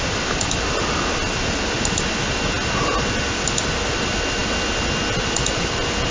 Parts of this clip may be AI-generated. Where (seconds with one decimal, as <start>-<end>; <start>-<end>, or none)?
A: none